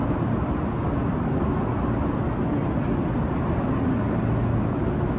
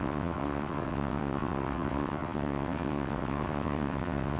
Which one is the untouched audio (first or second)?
first